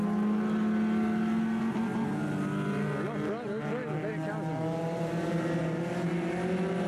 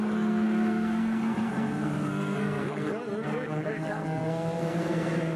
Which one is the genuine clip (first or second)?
first